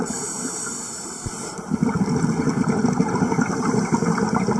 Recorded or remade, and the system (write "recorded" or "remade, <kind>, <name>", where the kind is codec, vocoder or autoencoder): recorded